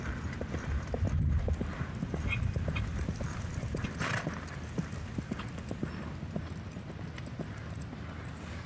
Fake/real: real